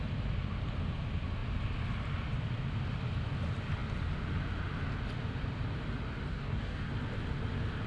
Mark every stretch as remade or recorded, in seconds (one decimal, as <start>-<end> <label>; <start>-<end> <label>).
0.0-6.3 recorded; 6.3-6.9 remade; 6.9-7.9 recorded